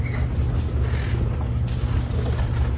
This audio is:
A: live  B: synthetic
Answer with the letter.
A